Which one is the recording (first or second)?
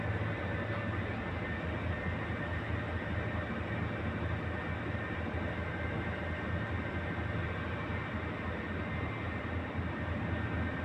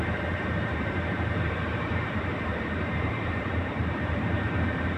first